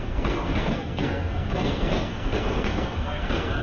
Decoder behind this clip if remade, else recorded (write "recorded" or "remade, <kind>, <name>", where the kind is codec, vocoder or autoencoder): remade, codec, SNAC